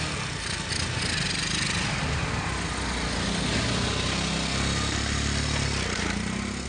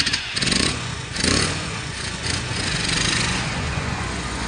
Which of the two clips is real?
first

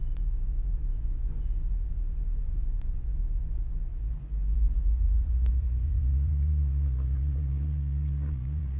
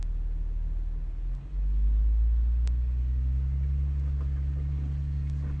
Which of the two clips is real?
second